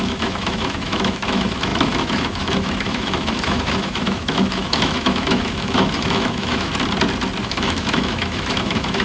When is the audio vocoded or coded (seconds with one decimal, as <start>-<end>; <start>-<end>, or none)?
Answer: 0.0-6.7; 7.4-9.0